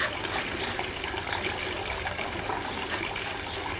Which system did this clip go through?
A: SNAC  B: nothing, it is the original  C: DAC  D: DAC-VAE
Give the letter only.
B